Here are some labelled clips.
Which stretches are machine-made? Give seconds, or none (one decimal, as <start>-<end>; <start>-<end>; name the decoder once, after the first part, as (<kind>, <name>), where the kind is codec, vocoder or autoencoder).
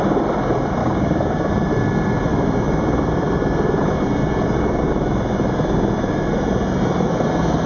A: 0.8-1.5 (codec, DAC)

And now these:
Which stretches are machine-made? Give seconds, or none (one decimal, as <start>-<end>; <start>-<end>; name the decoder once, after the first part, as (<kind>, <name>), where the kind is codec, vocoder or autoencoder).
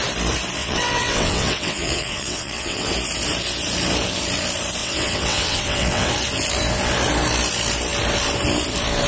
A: 0.6-2.9 (vocoder, WaveNeXt); 4.8-6.1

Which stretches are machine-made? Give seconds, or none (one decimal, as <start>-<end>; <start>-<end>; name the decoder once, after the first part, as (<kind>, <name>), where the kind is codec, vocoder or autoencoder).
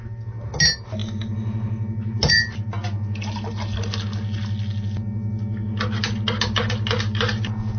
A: none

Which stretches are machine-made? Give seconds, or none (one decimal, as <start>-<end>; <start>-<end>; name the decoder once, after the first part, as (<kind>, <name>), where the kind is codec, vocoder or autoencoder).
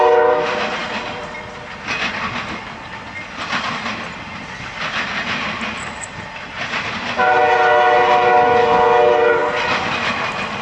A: none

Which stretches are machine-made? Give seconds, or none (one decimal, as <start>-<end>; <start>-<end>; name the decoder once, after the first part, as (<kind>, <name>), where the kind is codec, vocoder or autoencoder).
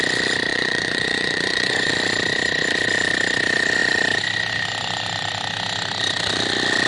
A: 0.5-1.9 (vocoder, Vocos)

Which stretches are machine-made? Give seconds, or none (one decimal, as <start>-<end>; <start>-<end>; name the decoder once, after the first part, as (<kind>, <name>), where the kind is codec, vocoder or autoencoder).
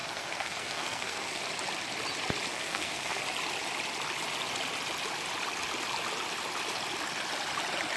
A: 0.0-1.4 (codec, SNAC); 2.5-3.2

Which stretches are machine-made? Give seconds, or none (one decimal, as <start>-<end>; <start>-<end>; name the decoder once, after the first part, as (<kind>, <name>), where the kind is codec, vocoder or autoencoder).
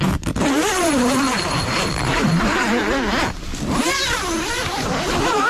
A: 0.0-2.8 (vocoder, BigVGAN v2); 4.6-5.5